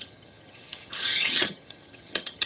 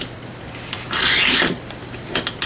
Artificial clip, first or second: first